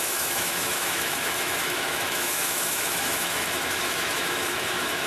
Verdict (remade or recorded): remade